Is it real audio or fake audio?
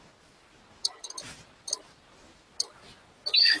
real